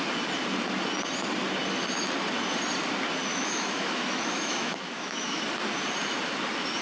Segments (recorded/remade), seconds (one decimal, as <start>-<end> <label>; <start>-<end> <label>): 0.0-3.3 recorded; 3.3-5.4 remade; 5.4-6.8 recorded